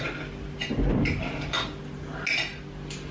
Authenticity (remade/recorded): recorded